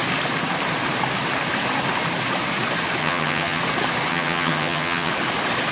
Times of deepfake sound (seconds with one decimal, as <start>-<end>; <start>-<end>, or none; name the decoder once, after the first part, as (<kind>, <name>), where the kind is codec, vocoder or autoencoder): 3.0-3.6 (vocoder, HiFi-GAN); 4.1-5.1